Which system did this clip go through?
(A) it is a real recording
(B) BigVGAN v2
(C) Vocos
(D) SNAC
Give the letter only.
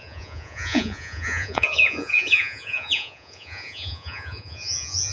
C